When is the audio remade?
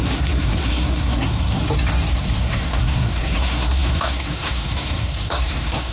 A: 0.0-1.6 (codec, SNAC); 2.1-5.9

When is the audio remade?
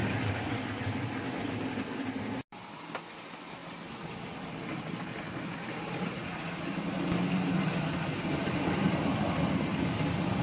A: none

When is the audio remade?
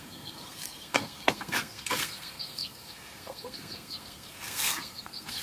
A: 0.0-5.4 (codec, SNAC)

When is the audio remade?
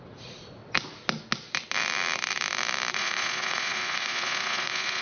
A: 0.0-0.6 (vocoder, Vocos); 2.9-5.0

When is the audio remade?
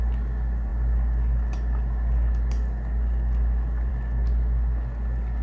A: none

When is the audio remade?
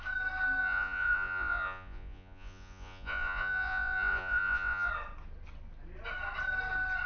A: 0.6-4.9 (vocoder, Vocos)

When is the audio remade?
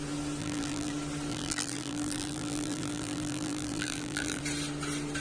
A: 0.4-0.9 (vocoder, BigVGAN v2); 1.3-4.4